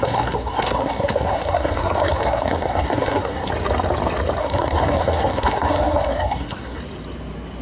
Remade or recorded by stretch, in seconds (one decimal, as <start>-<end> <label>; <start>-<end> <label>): 0.0-3.5 remade; 3.5-4.4 recorded; 4.4-6.8 remade; 6.8-7.6 recorded